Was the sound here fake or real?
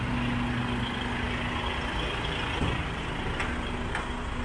real